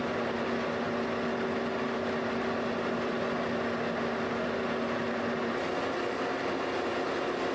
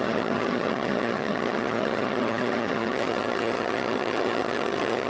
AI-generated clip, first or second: second